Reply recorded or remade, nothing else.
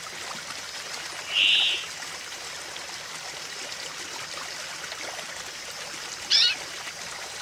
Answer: recorded